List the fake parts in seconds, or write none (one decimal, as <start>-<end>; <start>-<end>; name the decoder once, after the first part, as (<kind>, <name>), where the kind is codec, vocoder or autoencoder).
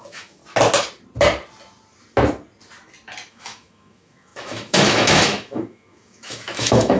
0.0-0.4 (autoencoder, DAC-VAE); 3.3-7.0